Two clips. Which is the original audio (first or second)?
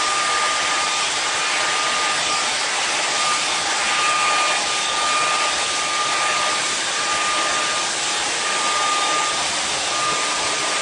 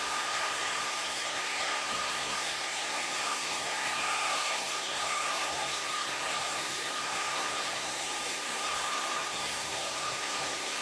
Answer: first